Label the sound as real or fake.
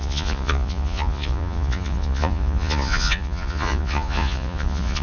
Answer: fake